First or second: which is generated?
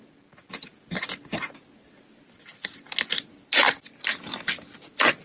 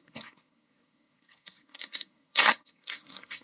second